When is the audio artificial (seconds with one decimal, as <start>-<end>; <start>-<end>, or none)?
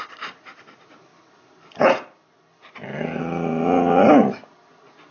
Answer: 1.1-3.2